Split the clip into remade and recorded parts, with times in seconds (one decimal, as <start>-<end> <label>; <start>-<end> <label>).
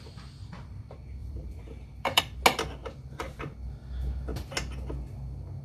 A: 0.0-1.2 recorded; 1.2-2.2 remade; 2.2-2.8 recorded; 2.8-3.4 remade; 3.4-5.6 recorded